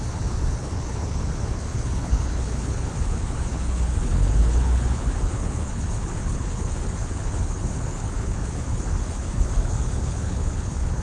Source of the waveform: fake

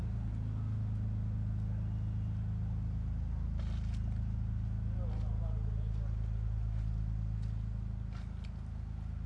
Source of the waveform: real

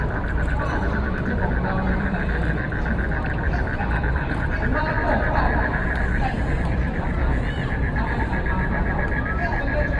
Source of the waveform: fake